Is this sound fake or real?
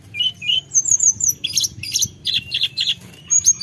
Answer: fake